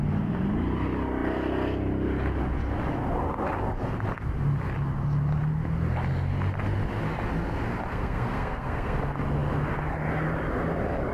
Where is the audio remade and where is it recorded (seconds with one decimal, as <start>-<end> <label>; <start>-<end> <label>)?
0.0-7.9 recorded; 7.9-9.0 remade; 9.0-11.1 recorded